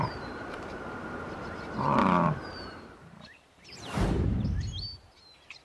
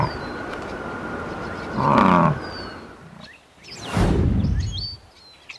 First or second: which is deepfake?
first